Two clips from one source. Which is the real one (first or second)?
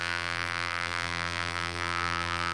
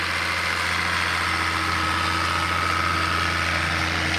second